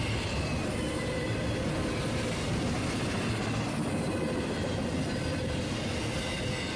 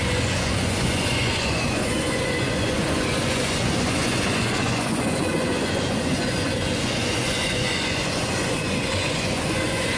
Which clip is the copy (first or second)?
second